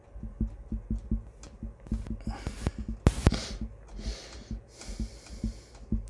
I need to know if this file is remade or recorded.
recorded